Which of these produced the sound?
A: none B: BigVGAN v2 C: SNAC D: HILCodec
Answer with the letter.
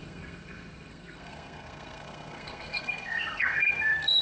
C